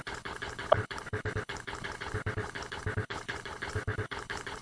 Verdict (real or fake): fake